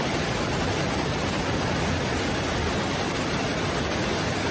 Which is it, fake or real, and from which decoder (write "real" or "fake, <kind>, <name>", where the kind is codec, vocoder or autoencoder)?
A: real